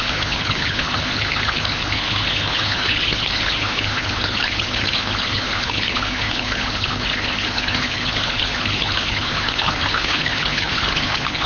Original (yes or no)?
no